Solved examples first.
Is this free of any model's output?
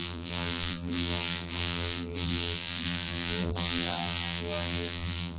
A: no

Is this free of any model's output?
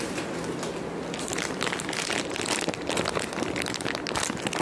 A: yes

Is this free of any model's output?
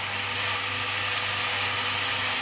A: yes